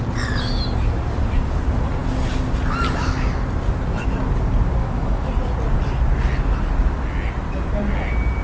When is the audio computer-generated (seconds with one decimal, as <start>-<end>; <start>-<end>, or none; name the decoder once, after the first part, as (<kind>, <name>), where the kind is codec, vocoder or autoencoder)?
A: 4.8-5.3 (autoencoder, DAC-VAE)